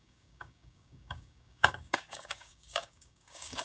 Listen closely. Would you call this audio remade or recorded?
remade